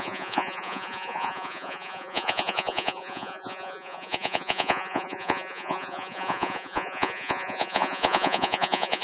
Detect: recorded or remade remade